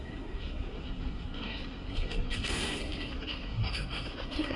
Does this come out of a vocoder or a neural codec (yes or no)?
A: yes